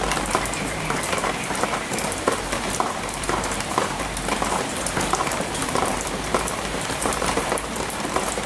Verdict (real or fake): fake